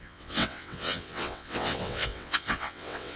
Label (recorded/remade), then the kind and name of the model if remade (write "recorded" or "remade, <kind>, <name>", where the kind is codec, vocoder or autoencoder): remade, vocoder, WaveNeXt